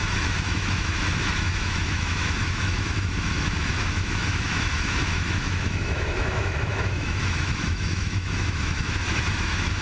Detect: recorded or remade remade